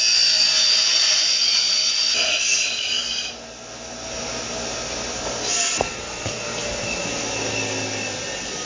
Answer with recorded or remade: recorded